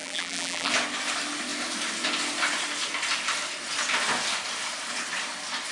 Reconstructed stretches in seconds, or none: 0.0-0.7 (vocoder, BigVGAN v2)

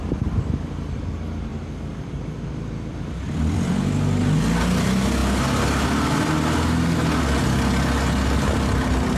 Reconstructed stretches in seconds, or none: 1.5-3.7 (vocoder, BigVGAN v2)